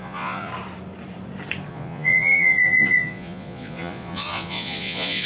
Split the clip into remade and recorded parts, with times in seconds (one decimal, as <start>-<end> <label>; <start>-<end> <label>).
0.0-0.5 remade; 0.5-1.7 recorded; 1.7-5.3 remade